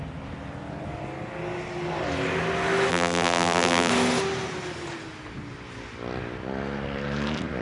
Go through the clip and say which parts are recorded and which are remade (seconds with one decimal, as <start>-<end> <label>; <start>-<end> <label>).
0.0-2.9 recorded; 2.9-3.9 remade; 3.9-7.6 recorded